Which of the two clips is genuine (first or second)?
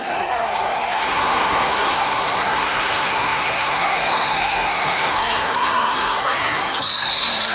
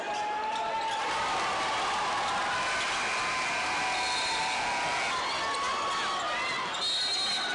second